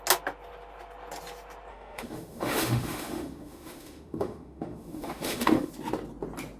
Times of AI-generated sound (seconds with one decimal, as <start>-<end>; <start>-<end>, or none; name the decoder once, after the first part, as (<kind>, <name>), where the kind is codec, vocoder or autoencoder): 1.7-5.7 (autoencoder, DAC-VAE)